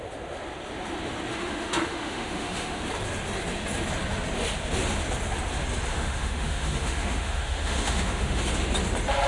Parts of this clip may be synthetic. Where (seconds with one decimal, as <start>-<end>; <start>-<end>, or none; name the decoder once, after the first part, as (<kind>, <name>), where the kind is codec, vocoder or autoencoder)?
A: 1.3-2.8 (autoencoder, DAC-VAE); 5.9-8.4